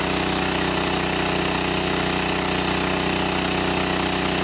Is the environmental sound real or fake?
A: real